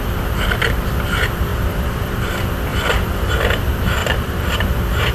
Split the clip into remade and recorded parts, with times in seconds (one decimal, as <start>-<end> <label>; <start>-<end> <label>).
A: 0.0-1.5 recorded; 1.5-2.3 remade; 2.3-2.7 recorded; 2.7-3.5 remade; 3.5-4.0 recorded; 4.0-4.5 remade; 4.5-5.1 recorded